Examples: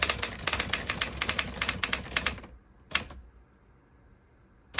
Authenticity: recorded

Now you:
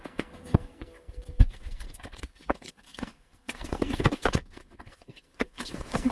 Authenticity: remade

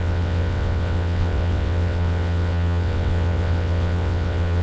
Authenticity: remade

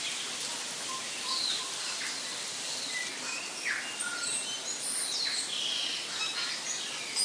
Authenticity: recorded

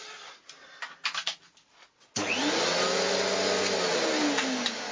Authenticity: recorded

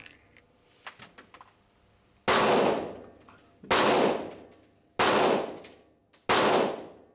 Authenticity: recorded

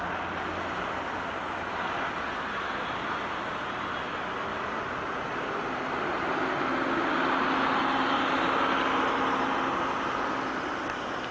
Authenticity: recorded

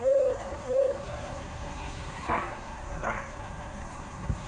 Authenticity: remade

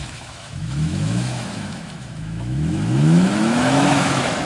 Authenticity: remade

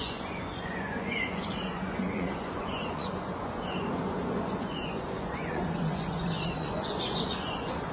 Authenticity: remade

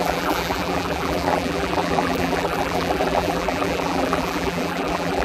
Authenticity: remade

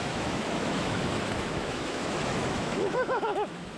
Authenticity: remade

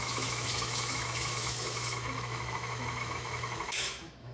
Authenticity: remade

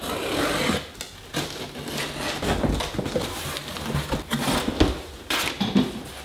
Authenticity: recorded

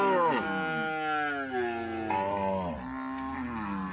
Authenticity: recorded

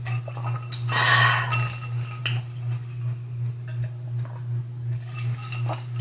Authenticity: recorded